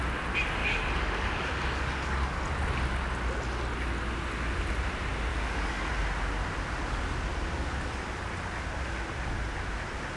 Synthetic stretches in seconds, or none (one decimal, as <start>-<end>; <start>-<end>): 0.6-2.4; 5.3-5.9